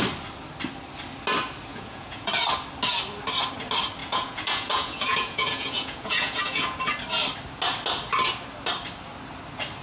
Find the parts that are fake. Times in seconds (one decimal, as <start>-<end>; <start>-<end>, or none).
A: 1.7-2.3; 4.0-6.8